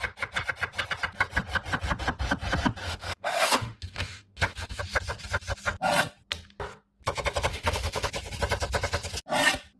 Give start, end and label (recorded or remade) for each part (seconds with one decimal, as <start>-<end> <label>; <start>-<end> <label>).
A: 0.0-2.8 recorded; 2.8-4.8 remade; 4.8-7.5 recorded; 7.5-8.1 remade; 8.1-9.8 recorded